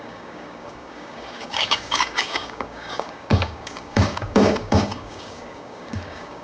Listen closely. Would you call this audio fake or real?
fake